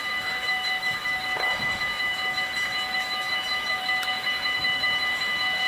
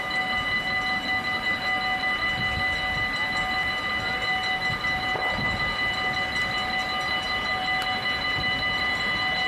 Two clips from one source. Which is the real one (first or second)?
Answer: second